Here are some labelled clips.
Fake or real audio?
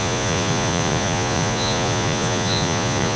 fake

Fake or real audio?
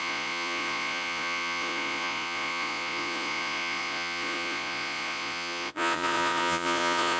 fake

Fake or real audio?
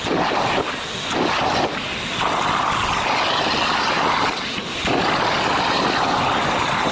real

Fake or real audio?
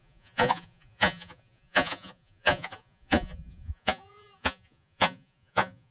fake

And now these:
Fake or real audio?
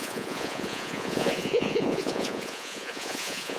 fake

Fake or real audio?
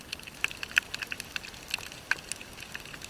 real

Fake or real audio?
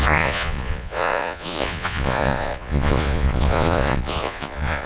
fake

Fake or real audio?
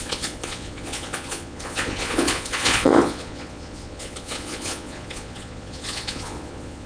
fake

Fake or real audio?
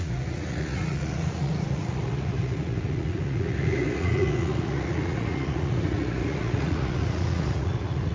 fake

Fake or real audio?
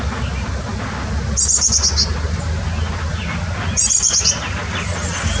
real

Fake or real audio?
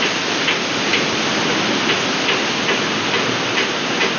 real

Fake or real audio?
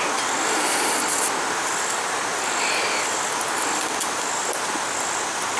real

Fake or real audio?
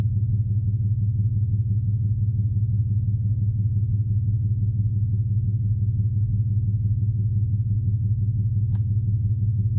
real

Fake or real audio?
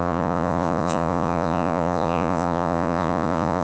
fake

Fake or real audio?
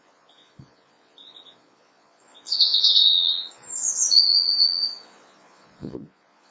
fake